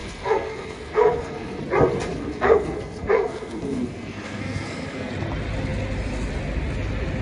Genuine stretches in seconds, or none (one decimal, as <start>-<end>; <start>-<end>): 1.6-2.1; 5.1-7.2